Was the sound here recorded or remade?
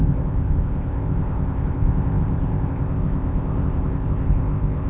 remade